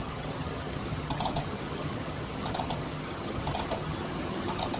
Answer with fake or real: fake